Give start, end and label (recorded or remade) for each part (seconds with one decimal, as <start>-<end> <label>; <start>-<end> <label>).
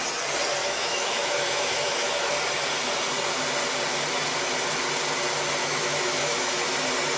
0.0-0.6 recorded; 0.6-2.3 remade; 2.3-5.6 recorded; 5.6-6.6 remade; 6.6-7.2 recorded